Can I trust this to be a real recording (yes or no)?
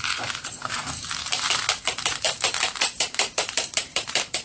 no